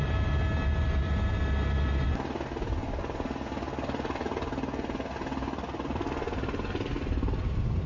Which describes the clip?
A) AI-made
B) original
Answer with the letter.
B